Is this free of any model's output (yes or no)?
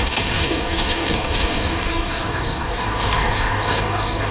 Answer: no